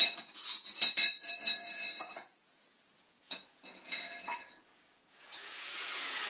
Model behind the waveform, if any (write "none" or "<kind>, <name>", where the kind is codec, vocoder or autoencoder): vocoder, Vocos